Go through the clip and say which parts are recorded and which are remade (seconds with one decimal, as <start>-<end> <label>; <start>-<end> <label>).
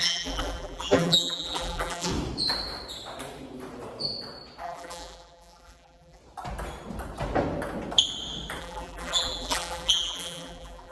0.0-2.1 remade; 2.1-4.6 recorded; 4.6-6.2 remade; 6.2-8.6 recorded; 8.6-10.9 remade